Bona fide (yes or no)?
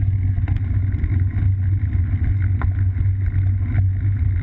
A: yes